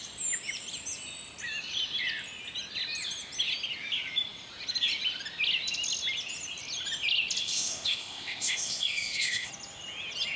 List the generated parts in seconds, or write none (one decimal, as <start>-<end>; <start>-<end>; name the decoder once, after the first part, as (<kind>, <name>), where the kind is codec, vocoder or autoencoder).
7.4-9.5 (codec, ZipCodec)